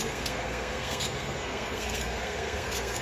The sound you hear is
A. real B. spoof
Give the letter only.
B